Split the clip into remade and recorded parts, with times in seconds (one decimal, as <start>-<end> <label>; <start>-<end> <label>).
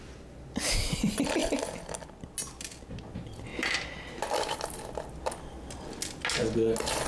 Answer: 0.0-7.1 recorded